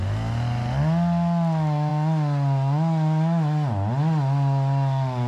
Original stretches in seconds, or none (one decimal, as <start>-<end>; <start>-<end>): 0.0-5.3